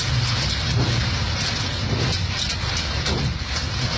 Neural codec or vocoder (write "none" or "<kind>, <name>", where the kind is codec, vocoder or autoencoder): none